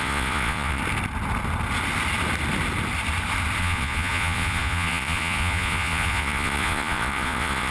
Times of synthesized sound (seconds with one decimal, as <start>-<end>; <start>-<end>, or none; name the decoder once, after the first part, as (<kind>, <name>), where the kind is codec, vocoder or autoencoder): 0.0-0.8 (vocoder, Vocos); 3.6-7.7